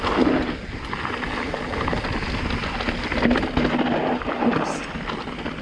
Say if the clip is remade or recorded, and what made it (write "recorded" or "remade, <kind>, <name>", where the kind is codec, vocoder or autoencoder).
recorded